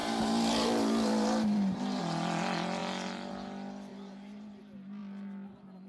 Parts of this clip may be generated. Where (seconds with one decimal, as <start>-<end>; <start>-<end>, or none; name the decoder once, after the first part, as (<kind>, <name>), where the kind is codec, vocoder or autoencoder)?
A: 0.0-2.0 (vocoder, BigVGAN v2); 3.9-4.6